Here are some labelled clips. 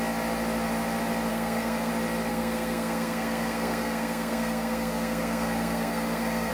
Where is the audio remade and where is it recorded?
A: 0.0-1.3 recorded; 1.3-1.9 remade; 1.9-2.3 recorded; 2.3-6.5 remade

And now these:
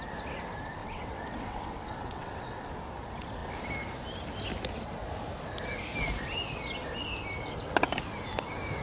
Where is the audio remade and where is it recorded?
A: 0.0-0.8 recorded; 0.8-2.7 remade; 2.7-8.8 recorded